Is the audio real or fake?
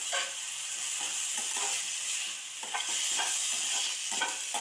real